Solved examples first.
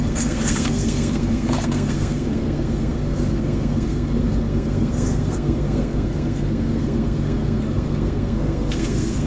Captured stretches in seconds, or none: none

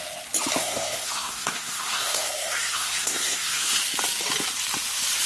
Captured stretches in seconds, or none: 0.0-0.6; 3.8-5.3

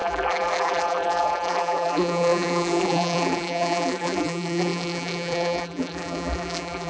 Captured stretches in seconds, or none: none

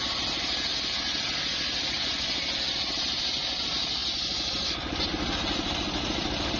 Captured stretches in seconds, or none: 0.0-6.6

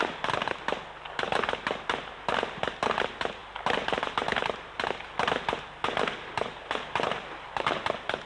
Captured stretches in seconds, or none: 0.0-8.3

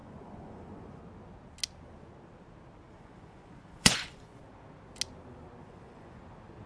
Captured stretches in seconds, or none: 1.0-2.9; 4.4-5.6; 6.2-6.7

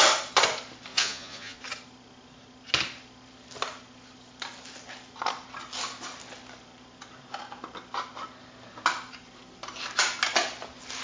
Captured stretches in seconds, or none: 0.0-0.9; 1.6-11.0